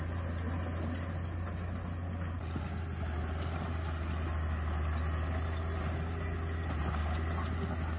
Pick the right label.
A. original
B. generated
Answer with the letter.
A